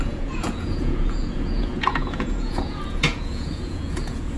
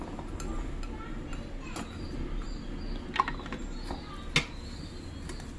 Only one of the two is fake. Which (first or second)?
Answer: first